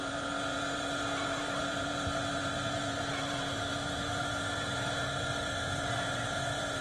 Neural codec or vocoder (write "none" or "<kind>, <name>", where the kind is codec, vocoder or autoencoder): vocoder, Vocos